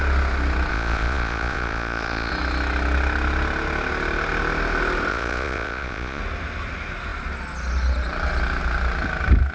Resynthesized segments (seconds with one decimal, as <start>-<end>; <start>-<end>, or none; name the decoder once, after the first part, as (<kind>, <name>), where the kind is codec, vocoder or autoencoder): 0.7-2.3 (vocoder, Vocos); 5.1-6.2